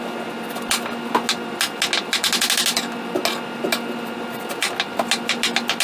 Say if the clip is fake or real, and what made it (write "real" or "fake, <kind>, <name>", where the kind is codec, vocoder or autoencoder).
real